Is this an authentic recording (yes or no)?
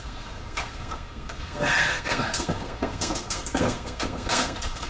no